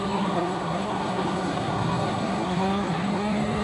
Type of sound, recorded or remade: remade